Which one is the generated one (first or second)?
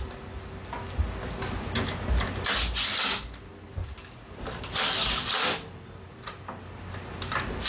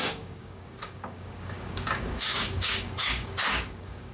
second